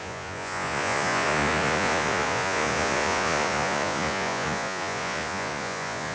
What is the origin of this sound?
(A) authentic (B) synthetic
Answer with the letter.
B